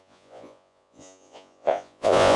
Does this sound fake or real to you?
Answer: fake